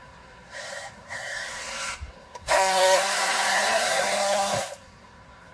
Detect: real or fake fake